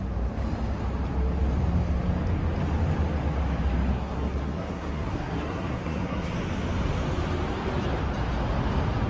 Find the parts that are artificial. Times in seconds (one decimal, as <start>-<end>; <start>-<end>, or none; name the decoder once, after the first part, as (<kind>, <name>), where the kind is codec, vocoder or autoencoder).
3.9-6.3 (codec, SNAC)